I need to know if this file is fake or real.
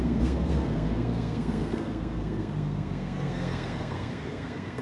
fake